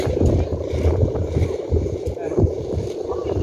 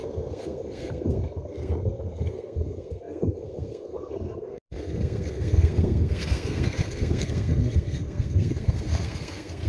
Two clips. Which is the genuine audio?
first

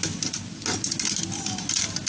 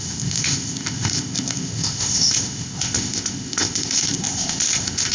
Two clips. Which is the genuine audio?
first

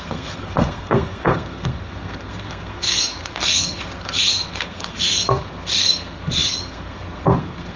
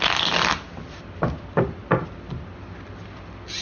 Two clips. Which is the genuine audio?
second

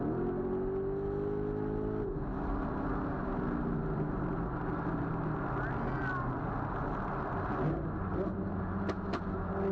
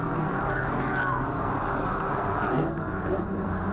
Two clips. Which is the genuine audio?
first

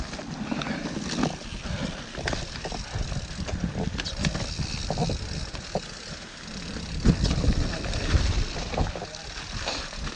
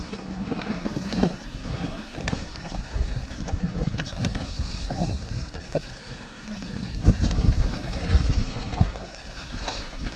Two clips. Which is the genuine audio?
first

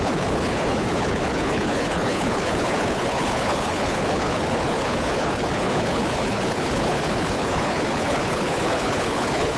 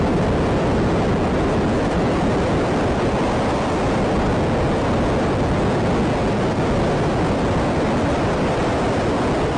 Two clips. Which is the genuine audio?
second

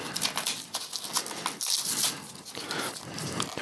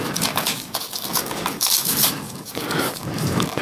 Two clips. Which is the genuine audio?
first